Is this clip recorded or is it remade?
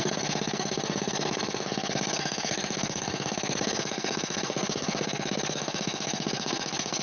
remade